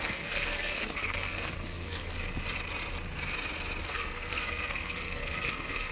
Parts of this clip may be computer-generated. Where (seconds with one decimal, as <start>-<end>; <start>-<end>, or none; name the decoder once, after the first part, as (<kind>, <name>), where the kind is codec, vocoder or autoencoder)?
0.0-2.0 (codec, SNAC); 3.8-5.9